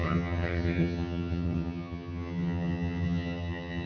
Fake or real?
fake